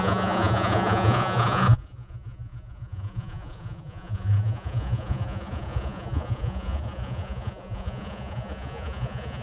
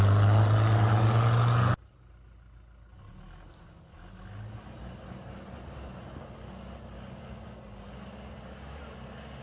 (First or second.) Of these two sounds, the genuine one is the second